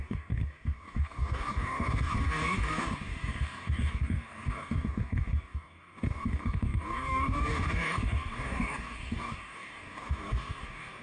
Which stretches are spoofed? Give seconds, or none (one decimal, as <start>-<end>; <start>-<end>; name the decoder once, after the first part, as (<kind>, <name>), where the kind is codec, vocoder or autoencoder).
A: 0.0-11.0 (codec, DAC)